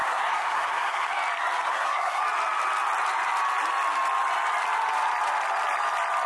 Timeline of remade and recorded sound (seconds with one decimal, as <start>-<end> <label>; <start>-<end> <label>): 0.0-1.1 remade; 1.1-1.7 recorded; 1.7-2.2 remade; 2.2-6.3 recorded